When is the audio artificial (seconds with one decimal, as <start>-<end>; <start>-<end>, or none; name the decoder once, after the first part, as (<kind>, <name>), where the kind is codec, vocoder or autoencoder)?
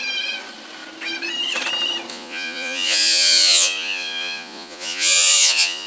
2.1-5.9 (vocoder, Vocos)